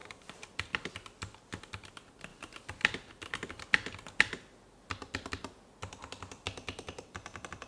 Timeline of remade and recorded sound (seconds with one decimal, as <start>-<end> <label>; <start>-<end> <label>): 0.0-0.9 remade; 0.9-7.7 recorded